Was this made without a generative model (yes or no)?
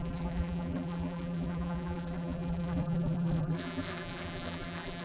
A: no